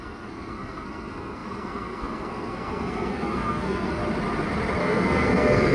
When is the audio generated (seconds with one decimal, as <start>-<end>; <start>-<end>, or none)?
0.0-4.0; 4.8-5.7